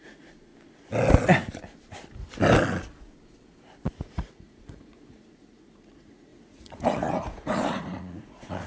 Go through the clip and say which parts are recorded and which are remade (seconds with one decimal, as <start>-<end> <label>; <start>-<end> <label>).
0.0-0.5 remade; 0.5-4.0 recorded; 4.0-8.7 remade